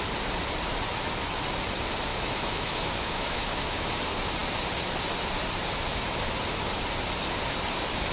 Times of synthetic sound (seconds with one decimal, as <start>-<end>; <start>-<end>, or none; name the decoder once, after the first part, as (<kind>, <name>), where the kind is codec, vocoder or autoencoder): 2.1-3.9 (autoencoder, DAC-VAE)